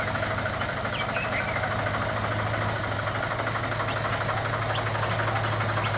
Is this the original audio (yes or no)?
yes